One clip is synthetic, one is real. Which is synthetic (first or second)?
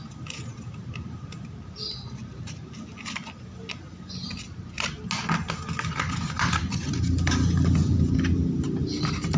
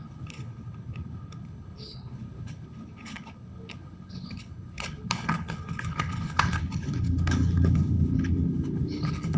second